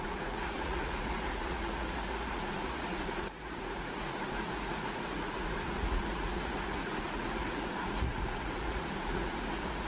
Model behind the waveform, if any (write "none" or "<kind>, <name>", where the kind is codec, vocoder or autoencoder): vocoder, Vocos